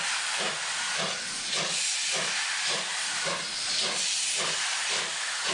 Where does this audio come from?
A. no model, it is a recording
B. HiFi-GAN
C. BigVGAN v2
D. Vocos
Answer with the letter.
A